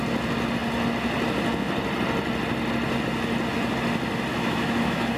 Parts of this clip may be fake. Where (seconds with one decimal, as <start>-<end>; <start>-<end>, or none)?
4.3-5.2